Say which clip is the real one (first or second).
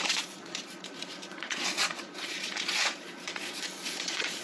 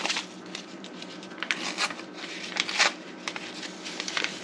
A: second